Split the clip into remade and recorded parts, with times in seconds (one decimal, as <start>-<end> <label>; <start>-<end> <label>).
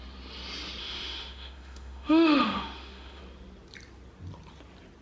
0.0-0.8 recorded; 0.8-3.2 remade; 3.2-5.0 recorded